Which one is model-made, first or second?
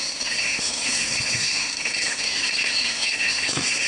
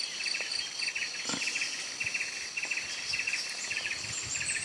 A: first